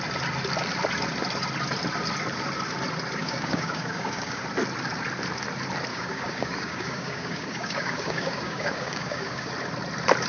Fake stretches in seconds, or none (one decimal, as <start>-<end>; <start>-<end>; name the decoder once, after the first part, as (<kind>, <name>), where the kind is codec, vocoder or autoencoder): 3.2-4.4 (codec, DAC); 5.9-9.5